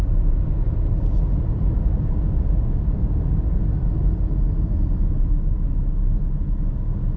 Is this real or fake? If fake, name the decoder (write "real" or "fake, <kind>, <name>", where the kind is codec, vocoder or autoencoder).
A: real